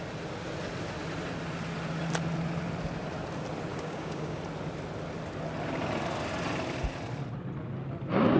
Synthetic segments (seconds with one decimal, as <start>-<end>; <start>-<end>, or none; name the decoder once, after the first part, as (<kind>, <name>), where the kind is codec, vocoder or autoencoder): 3.7-4.4 (codec, DAC)

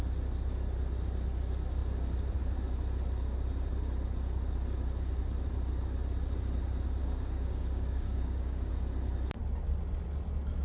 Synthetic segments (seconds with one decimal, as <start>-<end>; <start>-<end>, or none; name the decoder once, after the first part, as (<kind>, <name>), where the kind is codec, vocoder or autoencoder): 7.0-8.7 (codec, DAC)

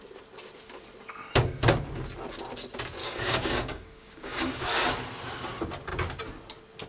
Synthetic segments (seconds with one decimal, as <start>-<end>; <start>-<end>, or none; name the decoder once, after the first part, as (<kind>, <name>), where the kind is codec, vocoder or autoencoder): 3.0-4.9 (codec, DAC)

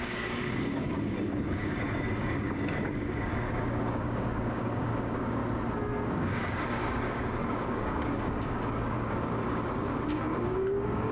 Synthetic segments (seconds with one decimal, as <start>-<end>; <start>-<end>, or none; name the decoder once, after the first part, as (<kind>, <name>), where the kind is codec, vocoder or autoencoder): 0.0-5.4 (codec, DAC); 6.1-11.1

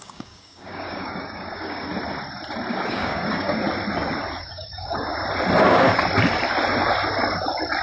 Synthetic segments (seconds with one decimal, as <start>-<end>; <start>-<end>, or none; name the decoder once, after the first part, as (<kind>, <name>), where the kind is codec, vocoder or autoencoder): 0.0-1.9 (codec, DAC); 2.9-3.6; 4.4-5.1